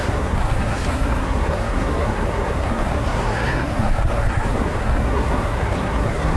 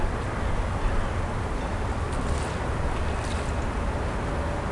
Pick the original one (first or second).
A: second